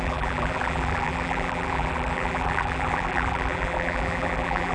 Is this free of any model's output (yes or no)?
no